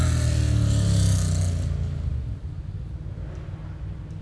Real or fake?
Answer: real